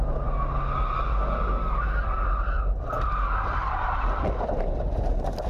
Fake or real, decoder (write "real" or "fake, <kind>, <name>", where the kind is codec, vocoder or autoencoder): real